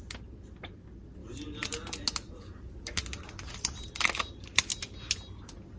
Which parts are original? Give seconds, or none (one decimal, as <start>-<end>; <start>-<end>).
0.0-5.8